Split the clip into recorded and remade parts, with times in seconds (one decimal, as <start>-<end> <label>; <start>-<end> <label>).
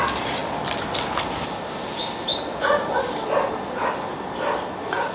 0.0-5.1 recorded